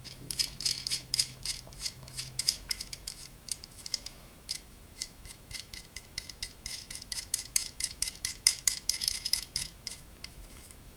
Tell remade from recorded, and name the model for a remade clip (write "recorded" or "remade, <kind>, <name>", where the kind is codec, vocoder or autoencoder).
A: remade, autoencoder, DAC-VAE